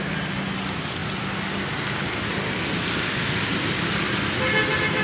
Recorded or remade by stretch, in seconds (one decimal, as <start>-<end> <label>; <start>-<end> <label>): 0.0-5.0 recorded

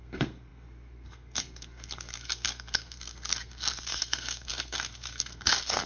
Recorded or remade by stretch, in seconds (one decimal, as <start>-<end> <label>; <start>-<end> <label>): 0.0-5.9 remade